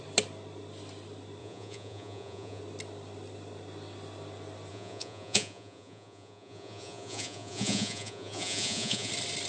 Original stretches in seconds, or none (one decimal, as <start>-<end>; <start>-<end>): 0.0-1.4; 2.6-4.7; 9.1-9.5